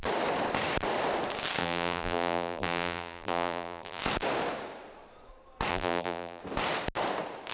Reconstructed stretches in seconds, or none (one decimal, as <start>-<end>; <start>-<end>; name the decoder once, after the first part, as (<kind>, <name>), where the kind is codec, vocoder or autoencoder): 1.6-4.0 (vocoder, BigVGAN v2); 5.7-6.4